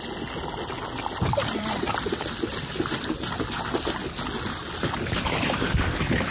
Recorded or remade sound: recorded